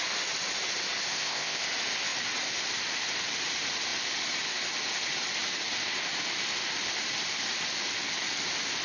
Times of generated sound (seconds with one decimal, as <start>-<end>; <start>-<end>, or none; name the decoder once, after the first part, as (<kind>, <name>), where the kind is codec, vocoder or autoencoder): 1.1-1.7 (codec, ZipCodec)